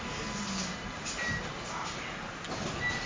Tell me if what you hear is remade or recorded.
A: recorded